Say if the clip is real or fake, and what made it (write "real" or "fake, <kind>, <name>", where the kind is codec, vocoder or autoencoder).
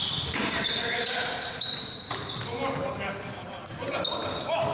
real